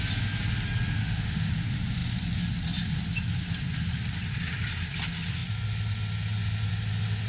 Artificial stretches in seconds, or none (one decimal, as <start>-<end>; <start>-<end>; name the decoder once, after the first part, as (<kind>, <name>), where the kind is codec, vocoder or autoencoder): 1.0-1.5 (autoencoder, DAC-VAE)